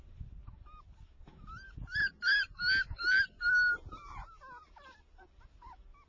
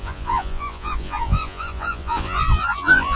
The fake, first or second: second